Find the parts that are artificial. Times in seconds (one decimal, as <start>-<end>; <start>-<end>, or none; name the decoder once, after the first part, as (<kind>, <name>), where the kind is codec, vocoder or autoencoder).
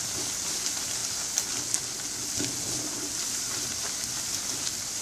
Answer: 0.0-1.0 (vocoder, BigVGAN v2); 2.8-5.0